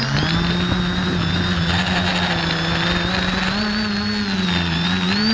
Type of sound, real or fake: real